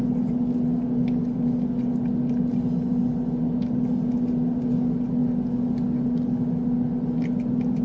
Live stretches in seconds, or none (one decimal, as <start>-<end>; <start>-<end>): 0.0-7.8